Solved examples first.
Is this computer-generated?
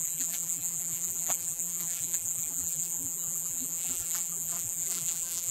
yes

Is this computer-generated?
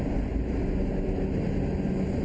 no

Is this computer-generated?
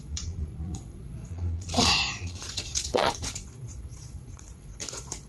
yes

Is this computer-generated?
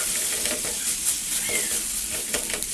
yes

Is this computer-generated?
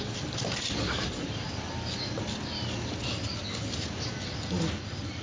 no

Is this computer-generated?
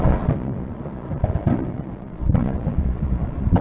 yes